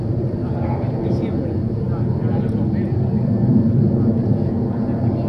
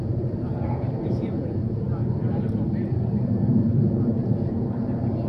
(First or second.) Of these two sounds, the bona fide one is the first